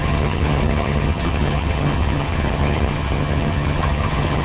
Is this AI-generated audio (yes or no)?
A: yes